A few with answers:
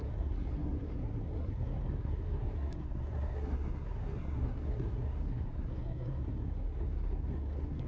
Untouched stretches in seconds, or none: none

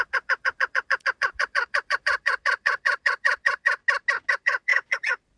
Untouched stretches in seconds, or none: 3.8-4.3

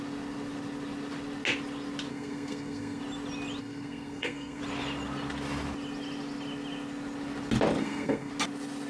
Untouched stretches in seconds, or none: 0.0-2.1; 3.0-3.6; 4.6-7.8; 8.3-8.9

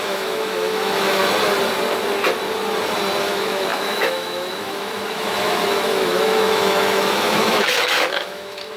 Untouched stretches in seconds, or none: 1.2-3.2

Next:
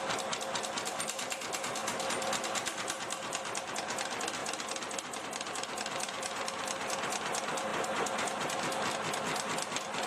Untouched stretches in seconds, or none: 0.0-10.1

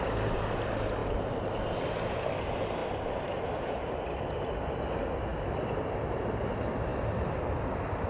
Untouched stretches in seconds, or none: 0.0-5.3; 5.8-8.1

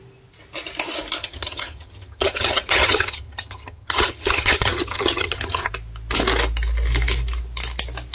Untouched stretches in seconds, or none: 0.0-1.2; 5.7-8.1